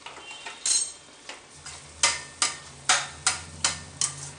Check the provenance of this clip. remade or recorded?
recorded